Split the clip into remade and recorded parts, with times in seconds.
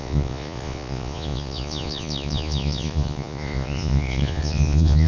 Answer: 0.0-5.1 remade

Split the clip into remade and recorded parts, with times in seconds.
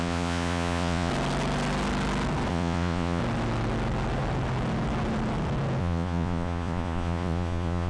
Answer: 0.0-1.1 remade; 1.1-2.5 recorded; 2.5-3.2 remade; 3.2-5.8 recorded; 5.8-7.9 remade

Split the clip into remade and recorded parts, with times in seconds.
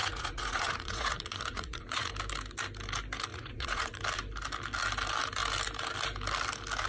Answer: 0.0-2.1 remade; 2.1-3.3 recorded; 3.3-4.0 remade; 4.0-6.9 recorded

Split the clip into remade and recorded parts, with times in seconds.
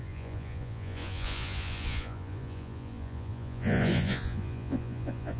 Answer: 0.0-5.4 remade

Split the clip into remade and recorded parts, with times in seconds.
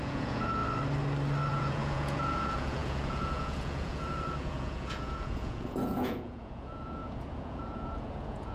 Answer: 0.0-0.6 remade; 0.6-1.5 recorded; 1.5-8.5 remade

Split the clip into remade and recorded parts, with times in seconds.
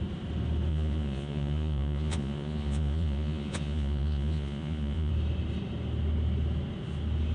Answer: 0.0-0.7 recorded; 0.7-5.1 remade; 5.1-7.3 recorded